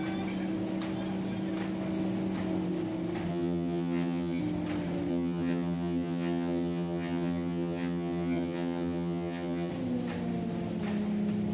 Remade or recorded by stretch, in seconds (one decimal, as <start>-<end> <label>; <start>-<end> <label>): 0.0-3.3 recorded; 3.3-4.4 remade; 4.4-5.1 recorded; 5.1-9.7 remade; 9.7-11.5 recorded